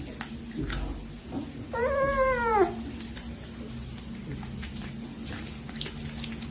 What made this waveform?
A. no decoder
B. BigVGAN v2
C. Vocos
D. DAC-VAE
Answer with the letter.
A